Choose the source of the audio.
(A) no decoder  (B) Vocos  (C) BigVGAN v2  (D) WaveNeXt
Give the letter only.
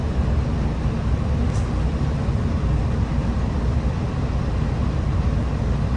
A